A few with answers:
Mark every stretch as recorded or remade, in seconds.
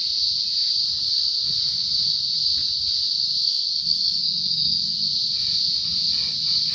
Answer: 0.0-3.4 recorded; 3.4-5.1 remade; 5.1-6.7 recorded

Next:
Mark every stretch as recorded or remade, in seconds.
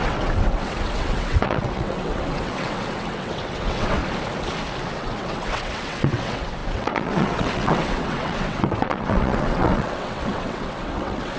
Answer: 0.0-4.0 remade; 4.0-4.9 recorded; 4.9-11.4 remade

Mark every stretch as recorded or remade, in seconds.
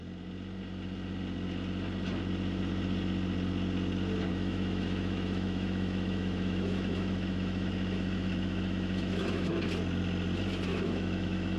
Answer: 0.0-4.3 recorded; 4.3-9.5 remade; 9.5-10.7 recorded; 10.7-11.6 remade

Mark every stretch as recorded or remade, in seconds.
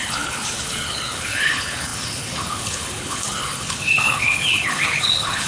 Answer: 0.0-5.5 remade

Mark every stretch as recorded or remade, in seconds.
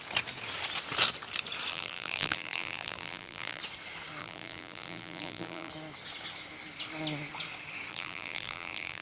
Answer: 0.0-1.7 recorded; 1.7-3.6 remade; 3.6-4.2 recorded; 4.2-5.7 remade; 5.7-7.9 recorded; 7.9-9.0 remade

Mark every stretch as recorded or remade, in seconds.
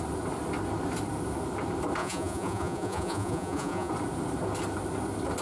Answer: 0.0-2.0 recorded; 2.0-3.9 remade; 3.9-5.4 recorded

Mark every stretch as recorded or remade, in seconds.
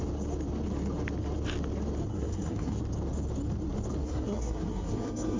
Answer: 0.0-2.1 recorded; 2.1-2.8 remade; 2.8-4.0 recorded; 4.0-5.4 remade